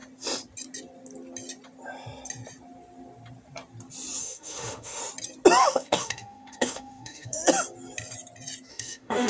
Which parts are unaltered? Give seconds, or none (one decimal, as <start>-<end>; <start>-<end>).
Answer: 0.0-4.2; 5.0-5.6; 7.4-8.7